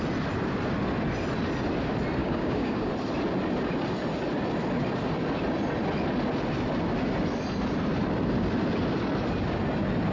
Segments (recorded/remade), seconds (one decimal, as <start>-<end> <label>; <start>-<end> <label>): 0.0-2.2 recorded; 2.2-2.9 remade; 2.9-10.1 recorded